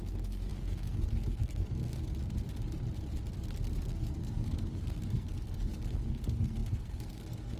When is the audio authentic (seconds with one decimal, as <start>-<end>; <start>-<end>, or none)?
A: 2.1-3.8